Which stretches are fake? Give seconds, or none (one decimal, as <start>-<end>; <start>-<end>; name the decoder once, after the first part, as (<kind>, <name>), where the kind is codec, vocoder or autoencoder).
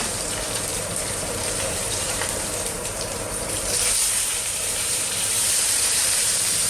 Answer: 0.0-6.7 (vocoder, BigVGAN v2)